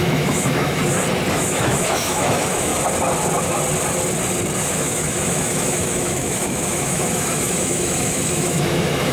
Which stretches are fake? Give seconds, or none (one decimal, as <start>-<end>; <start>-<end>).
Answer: 0.0-0.8; 1.3-2.7; 4.7-9.1